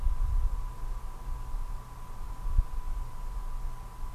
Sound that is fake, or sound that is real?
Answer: real